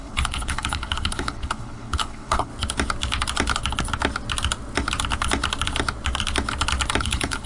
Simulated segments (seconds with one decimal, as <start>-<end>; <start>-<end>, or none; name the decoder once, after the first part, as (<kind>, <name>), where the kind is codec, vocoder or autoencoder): 0.0-2.5 (codec, HILCodec); 7.0-7.5